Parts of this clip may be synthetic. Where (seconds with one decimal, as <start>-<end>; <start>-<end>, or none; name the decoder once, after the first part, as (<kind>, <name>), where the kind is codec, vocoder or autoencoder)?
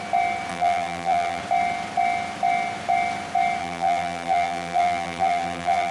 0.5-1.4 (vocoder, BigVGAN v2); 3.6-5.9